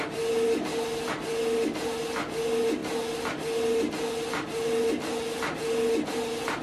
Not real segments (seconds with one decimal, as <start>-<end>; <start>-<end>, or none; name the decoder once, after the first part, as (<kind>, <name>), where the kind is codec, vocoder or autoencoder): none